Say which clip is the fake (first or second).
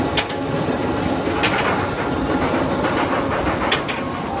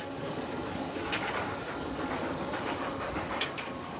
second